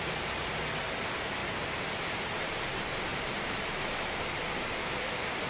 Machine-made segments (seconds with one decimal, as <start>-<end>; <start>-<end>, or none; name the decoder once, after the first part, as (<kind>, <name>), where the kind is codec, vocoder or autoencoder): 3.1-3.9 (vocoder, BigVGAN v2)